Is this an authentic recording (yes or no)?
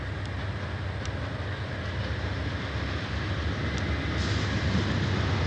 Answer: yes